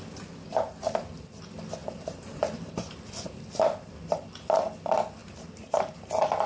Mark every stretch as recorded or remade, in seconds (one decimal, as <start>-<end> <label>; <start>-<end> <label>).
0.0-0.5 recorded; 0.5-1.4 remade; 1.4-1.8 recorded; 1.8-3.4 remade; 3.4-5.2 recorded; 5.2-5.9 remade; 5.9-6.5 recorded